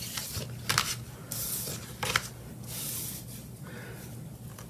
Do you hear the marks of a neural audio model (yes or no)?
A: no